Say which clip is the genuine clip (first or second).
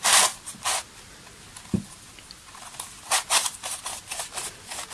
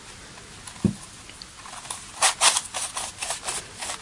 second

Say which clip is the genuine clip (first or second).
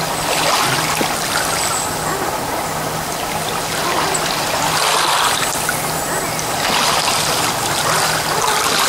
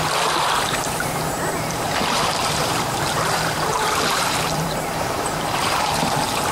first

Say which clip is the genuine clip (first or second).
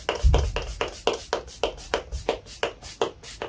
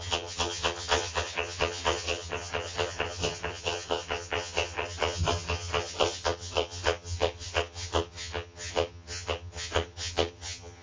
first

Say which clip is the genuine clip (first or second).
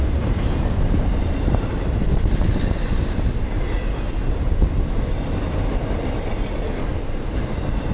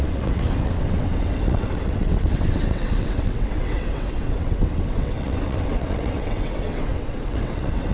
first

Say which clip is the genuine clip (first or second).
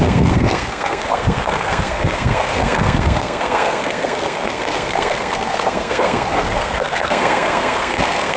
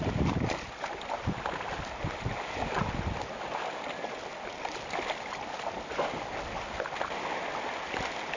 second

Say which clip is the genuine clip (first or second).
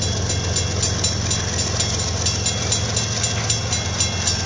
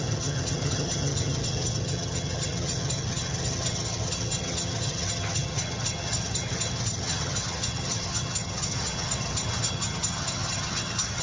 first